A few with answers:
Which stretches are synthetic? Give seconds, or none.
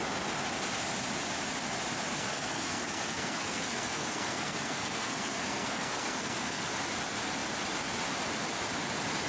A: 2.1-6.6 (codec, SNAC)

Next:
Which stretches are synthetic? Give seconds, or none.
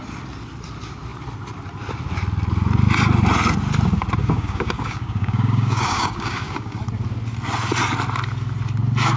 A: 4.2-6.8 (codec, DAC)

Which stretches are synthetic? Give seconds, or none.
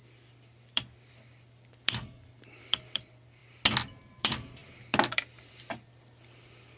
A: 0.0-3.4 (vocoder, BigVGAN v2); 4.0-6.8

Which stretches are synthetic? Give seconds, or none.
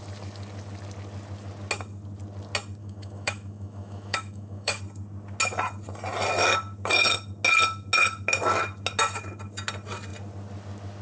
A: 2.8-4.8 (autoencoder, DAC-VAE)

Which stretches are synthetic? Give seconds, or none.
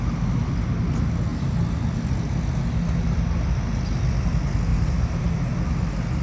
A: 4.7-5.5 (vocoder, BigVGAN v2)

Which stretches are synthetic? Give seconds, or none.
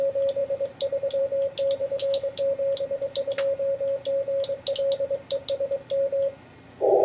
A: 1.8-2.4 (autoencoder, DAC-VAE)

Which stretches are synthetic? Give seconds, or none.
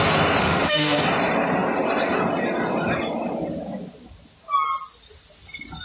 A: 0.4-1.0 (autoencoder, DAC-VAE)